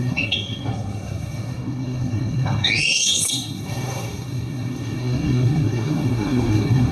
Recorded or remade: remade